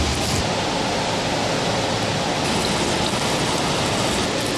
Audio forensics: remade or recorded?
recorded